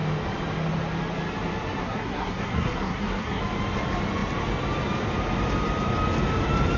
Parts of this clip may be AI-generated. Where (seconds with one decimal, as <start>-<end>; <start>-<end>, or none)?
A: 1.8-3.4